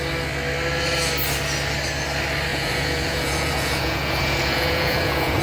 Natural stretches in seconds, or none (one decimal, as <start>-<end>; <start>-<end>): 0.0-2.5

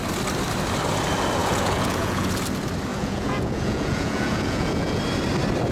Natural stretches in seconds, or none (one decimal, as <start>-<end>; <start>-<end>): 0.0-1.4; 2.3-2.9; 5.0-5.7